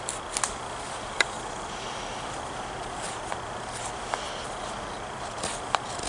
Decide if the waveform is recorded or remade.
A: recorded